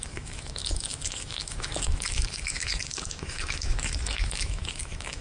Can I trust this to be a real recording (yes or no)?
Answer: no